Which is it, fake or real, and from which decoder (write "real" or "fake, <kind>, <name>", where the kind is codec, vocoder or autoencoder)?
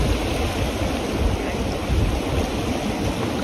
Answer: real